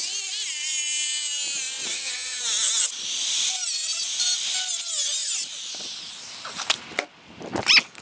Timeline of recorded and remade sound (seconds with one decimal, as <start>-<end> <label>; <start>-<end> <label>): 0.0-1.9 recorded; 1.9-2.4 remade; 2.4-8.0 recorded